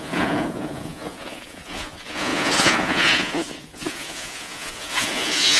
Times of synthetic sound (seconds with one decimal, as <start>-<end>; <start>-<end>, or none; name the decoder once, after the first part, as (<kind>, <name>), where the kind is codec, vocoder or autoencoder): 0.0-5.6 (vocoder, Vocos)